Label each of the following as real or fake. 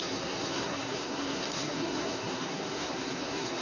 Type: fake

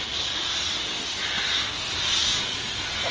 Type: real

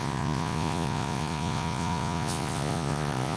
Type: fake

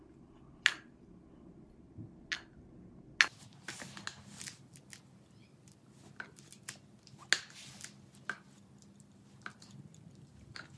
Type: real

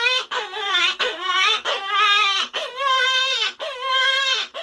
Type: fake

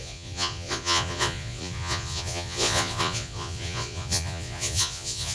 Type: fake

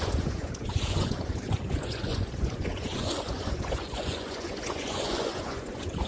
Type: fake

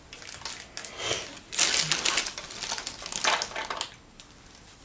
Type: real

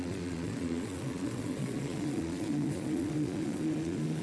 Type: fake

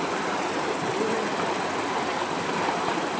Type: real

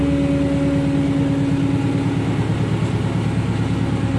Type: real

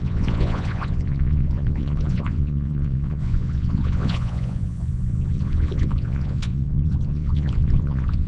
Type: fake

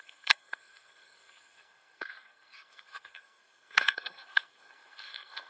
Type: fake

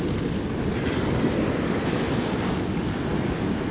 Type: real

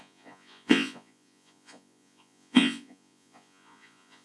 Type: fake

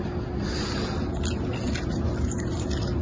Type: real